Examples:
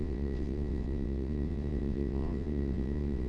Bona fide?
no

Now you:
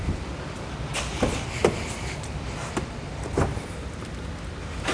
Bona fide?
yes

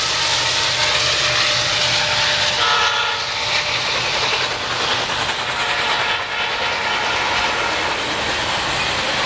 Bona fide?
yes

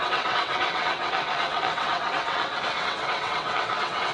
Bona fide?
no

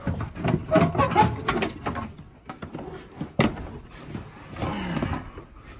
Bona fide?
yes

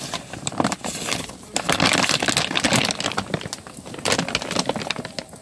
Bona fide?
yes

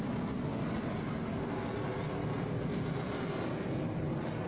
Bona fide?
yes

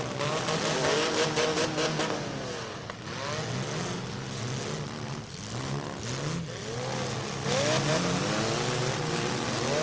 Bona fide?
yes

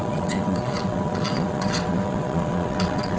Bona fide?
no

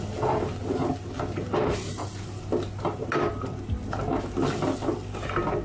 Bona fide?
yes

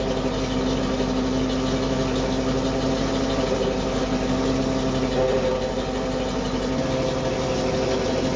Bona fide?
yes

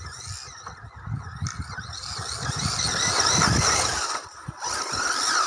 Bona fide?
yes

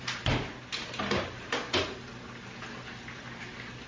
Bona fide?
yes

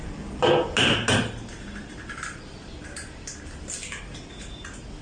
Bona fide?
yes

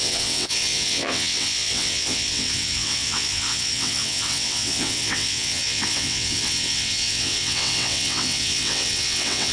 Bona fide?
no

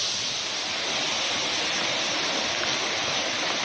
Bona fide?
yes